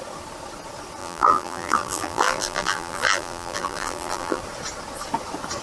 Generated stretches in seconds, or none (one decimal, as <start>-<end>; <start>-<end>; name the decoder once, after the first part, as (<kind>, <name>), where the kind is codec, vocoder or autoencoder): 1.0-4.4 (vocoder, BigVGAN v2)